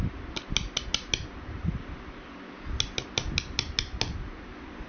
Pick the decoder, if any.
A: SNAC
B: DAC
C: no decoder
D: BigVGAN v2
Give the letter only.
C